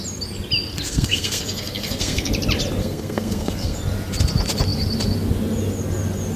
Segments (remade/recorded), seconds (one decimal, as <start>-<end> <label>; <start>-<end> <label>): 0.0-0.9 recorded; 0.9-2.3 remade; 2.3-2.8 recorded; 2.8-3.8 remade; 3.8-6.4 recorded